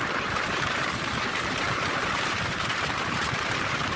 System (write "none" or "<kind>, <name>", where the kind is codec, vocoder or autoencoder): vocoder, BigVGAN v2